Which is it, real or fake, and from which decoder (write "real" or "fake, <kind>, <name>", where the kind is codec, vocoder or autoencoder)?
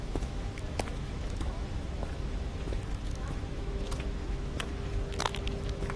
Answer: fake, autoencoder, DAC-VAE